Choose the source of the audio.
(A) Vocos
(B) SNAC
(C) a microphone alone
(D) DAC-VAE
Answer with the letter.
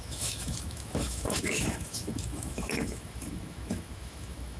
D